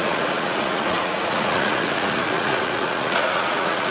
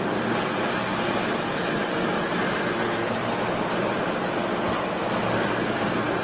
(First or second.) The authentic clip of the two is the second